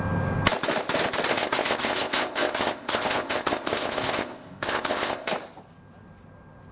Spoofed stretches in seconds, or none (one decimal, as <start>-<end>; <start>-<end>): 1.3-5.3